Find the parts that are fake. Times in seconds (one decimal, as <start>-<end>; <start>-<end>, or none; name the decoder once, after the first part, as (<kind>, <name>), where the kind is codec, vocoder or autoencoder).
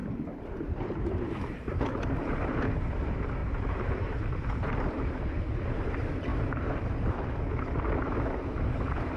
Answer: 0.0-2.5 (vocoder, BigVGAN v2); 3.4-3.9; 6.3-7.0